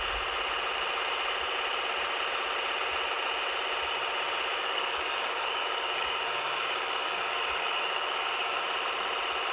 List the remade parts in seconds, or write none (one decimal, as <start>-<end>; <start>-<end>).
4.5-8.6